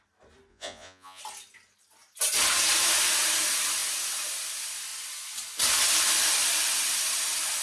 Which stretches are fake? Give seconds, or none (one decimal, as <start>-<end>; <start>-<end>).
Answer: 0.5-1.2